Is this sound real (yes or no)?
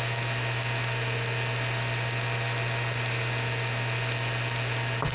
yes